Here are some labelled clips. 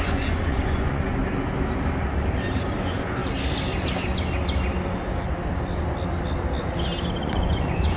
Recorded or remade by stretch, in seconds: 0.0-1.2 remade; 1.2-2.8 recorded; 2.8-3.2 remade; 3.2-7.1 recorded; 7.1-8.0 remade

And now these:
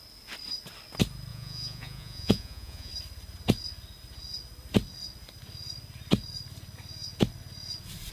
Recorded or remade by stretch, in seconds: 0.0-1.3 recorded; 1.3-2.9 remade; 2.9-8.1 recorded

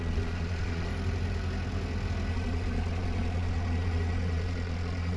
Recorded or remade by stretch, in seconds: 0.0-0.9 remade; 0.9-2.3 recorded; 2.3-5.2 remade

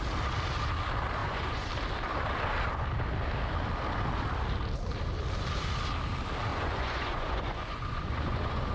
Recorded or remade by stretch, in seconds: 0.0-1.2 recorded; 1.2-1.7 remade; 1.7-6.5 recorded; 6.5-8.7 remade